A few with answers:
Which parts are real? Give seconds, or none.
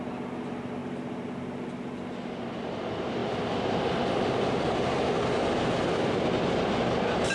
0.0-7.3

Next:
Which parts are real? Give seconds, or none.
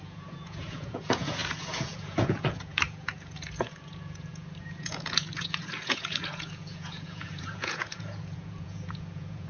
none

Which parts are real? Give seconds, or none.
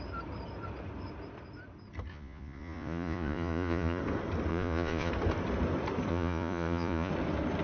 0.0-2.1; 4.0-4.5; 5.1-6.1; 7.1-7.6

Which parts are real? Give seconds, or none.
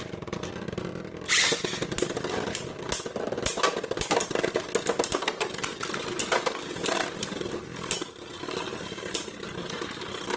0.0-10.4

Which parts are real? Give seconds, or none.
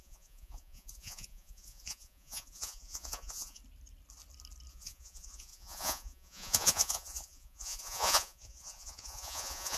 3.6-4.7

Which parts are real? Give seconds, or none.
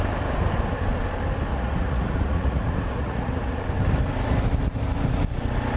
0.0-1.5; 3.6-5.8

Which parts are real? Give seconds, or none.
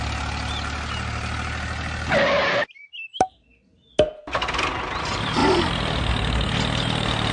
0.0-7.3